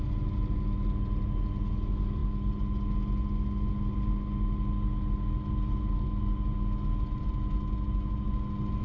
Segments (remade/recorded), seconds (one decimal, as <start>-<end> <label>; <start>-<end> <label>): 0.0-8.8 recorded